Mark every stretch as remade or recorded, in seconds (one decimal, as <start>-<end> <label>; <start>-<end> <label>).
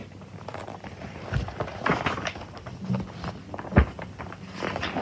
0.0-0.6 remade; 0.6-5.0 recorded